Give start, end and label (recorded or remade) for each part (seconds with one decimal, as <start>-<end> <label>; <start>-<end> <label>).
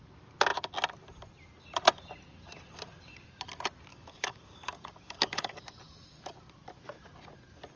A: 0.0-3.9 recorded; 3.9-5.6 remade; 5.6-7.8 recorded